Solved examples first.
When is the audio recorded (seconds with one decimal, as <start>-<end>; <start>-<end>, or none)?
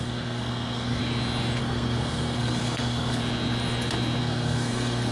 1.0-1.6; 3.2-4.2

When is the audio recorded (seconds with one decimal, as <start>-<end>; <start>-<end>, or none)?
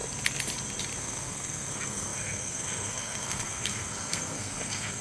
0.0-1.0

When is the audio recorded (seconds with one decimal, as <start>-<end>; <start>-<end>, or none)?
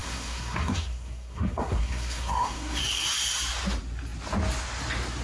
2.8-5.2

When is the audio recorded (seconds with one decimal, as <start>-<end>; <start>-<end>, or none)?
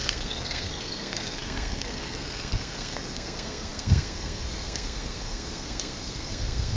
none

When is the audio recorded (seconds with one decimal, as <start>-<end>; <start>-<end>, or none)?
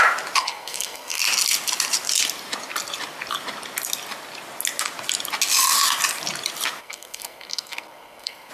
0.0-0.4; 1.2-6.8